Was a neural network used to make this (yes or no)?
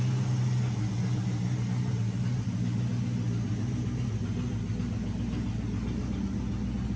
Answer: no